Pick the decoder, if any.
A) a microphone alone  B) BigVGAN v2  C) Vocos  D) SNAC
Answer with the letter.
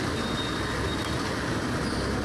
A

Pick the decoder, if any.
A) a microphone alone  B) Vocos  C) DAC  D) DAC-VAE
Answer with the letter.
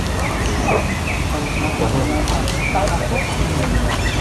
A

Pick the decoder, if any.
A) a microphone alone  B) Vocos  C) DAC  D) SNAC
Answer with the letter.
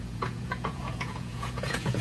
B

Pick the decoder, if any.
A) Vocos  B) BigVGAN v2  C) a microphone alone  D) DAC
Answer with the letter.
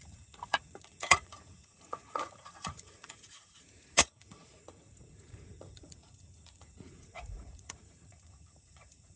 A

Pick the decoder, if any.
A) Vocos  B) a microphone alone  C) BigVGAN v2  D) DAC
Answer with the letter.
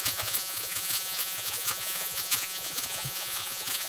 A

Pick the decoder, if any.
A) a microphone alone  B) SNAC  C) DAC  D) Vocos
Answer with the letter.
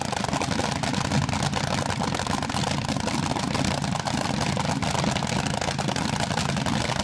A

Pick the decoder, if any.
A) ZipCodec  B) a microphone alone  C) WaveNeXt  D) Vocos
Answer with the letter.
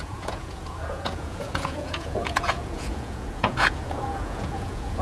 D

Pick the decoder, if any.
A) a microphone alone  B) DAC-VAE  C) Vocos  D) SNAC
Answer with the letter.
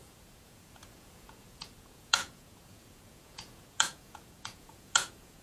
C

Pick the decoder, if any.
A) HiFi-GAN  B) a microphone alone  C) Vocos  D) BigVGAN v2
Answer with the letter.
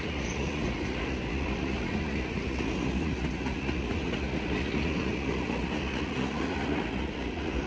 C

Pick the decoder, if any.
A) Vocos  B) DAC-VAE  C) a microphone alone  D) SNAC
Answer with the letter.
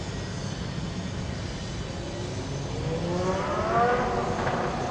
C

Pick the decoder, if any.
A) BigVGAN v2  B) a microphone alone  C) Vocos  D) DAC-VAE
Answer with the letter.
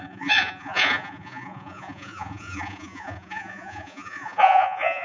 C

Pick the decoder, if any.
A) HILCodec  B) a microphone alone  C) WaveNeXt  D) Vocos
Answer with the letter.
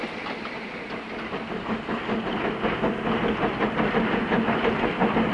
B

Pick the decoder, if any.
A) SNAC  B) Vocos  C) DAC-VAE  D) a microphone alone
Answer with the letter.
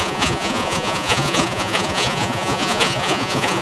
B